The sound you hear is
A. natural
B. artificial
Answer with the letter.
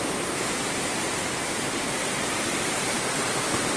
A